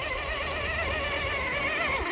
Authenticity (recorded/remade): recorded